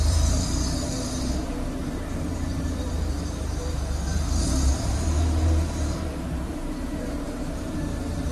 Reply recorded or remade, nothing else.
remade